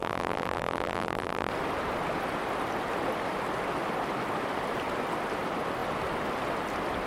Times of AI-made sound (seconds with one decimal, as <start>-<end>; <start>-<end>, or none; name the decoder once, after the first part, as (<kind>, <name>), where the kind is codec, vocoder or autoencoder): 0.0-1.5 (vocoder, BigVGAN v2)